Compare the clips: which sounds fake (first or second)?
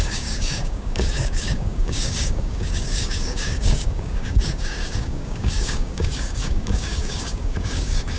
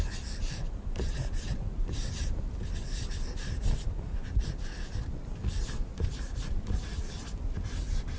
first